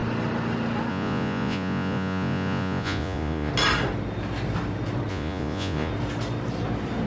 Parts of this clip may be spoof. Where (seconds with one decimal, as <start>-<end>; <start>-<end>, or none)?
0.9-3.5; 5.1-5.9